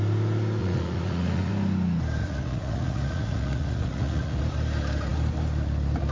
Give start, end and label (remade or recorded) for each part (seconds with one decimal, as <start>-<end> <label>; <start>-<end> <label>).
0.0-0.6 recorded; 0.6-1.5 remade; 1.5-2.2 recorded; 2.2-4.4 remade; 4.4-6.1 recorded